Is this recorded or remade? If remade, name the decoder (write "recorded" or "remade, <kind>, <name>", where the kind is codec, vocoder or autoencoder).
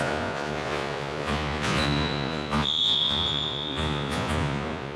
remade, vocoder, Vocos